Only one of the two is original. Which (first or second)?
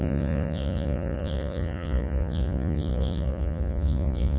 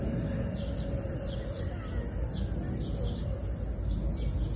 second